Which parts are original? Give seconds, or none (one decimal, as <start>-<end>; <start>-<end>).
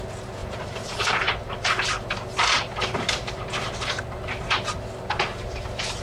0.0-0.4; 4.0-6.0